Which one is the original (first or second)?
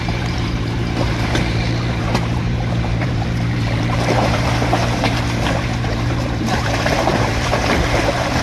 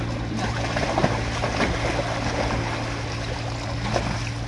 second